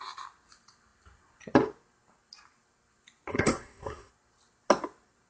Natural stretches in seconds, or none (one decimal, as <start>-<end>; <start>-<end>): 0.0-3.3; 4.1-5.3